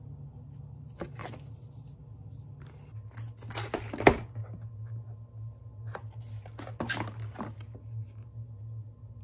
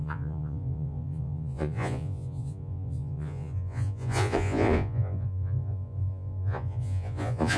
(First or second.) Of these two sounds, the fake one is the second